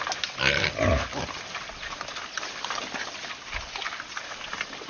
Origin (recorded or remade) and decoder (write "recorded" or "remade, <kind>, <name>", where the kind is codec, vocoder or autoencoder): recorded